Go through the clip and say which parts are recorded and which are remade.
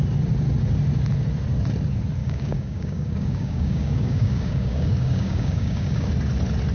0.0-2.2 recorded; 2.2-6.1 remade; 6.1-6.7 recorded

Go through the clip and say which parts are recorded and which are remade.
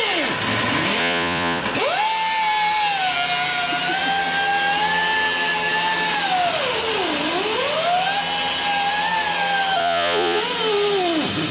0.0-1.0 recorded; 1.0-1.6 remade; 1.6-9.8 recorded; 9.8-10.4 remade; 10.4-11.5 recorded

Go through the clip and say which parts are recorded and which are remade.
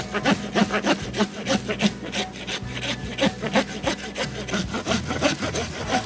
0.0-6.1 recorded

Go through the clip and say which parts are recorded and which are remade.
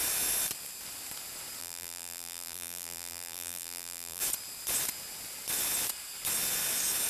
0.0-1.6 recorded; 1.6-4.2 remade; 4.2-7.1 recorded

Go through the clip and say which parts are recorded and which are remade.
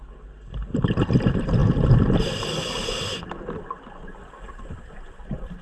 0.0-5.6 recorded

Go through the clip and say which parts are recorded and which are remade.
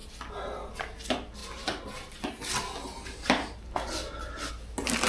0.0-5.1 recorded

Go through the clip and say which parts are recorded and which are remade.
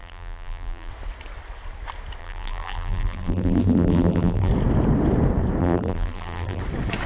0.0-0.9 remade; 0.9-2.2 recorded; 2.2-4.5 remade; 4.5-5.6 recorded; 5.6-6.6 remade; 6.6-7.1 recorded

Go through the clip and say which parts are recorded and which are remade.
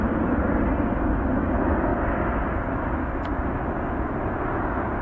0.0-5.0 recorded